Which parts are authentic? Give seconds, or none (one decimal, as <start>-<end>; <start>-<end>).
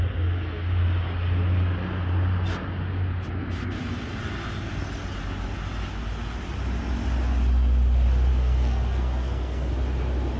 0.0-8.3; 9.7-10.4